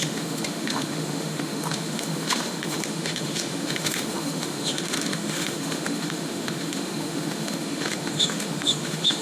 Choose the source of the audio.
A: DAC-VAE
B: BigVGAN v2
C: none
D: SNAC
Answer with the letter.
A